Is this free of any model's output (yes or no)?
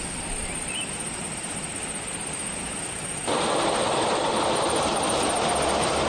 yes